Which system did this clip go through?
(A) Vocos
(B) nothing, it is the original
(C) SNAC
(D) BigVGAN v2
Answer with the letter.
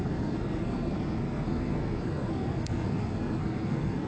C